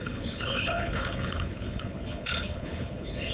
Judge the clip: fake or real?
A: fake